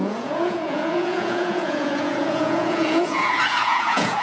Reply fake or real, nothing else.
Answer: fake